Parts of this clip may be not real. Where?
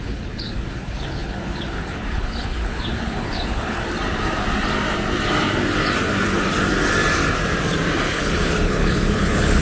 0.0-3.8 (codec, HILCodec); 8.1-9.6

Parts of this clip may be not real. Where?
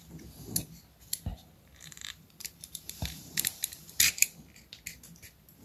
1.3-3.9 (vocoder, BigVGAN v2)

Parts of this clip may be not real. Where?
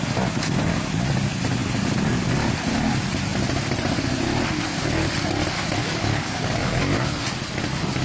5.8-6.8 (codec, DAC)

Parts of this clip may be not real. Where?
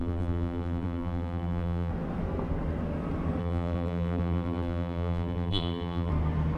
0.0-1.9 (vocoder, BigVGAN v2); 3.4-6.1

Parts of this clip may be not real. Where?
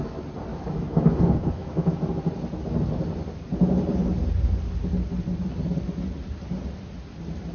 0.5-2.0 (autoencoder, DAC-VAE)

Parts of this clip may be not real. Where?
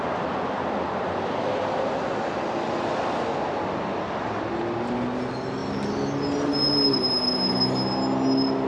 none